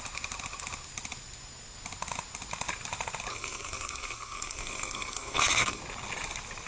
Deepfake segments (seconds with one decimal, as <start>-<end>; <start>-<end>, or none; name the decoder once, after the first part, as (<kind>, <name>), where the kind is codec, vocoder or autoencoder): 3.3-5.8 (codec, SNAC)